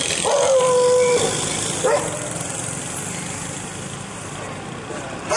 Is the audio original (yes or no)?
yes